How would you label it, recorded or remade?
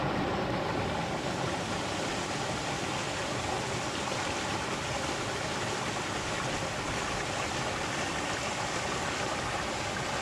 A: recorded